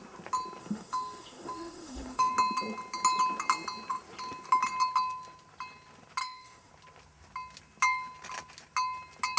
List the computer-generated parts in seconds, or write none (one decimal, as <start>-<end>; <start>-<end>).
0.6-2.3; 6.2-6.7